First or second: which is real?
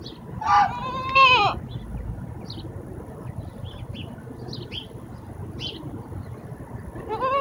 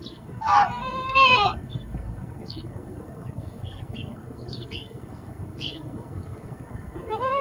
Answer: first